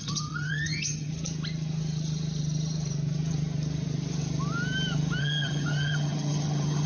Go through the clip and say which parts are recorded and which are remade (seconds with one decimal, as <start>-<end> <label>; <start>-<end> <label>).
0.0-1.1 remade; 1.1-5.2 recorded; 5.2-6.9 remade